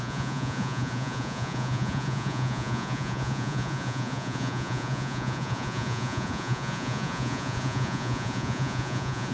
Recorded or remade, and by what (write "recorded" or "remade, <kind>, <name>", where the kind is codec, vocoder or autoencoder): remade, vocoder, Vocos